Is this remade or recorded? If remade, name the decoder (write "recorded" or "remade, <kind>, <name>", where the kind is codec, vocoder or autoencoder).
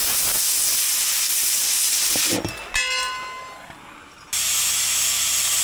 recorded